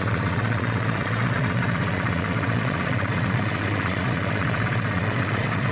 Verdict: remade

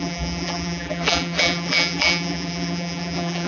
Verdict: remade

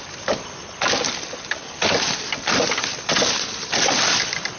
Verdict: recorded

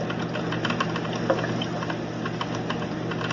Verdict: recorded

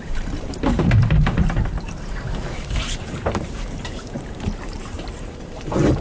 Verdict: remade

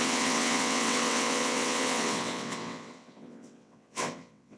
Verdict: remade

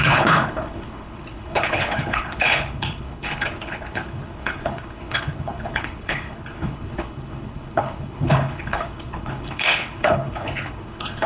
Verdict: remade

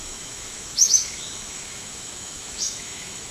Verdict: remade